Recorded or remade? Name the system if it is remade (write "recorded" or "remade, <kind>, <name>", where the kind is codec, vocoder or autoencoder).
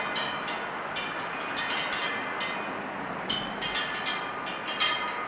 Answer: recorded